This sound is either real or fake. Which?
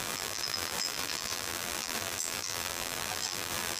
fake